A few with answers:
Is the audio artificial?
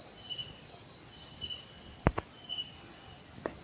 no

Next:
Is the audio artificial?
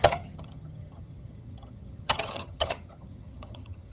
yes